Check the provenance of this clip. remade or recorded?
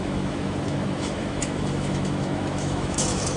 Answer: remade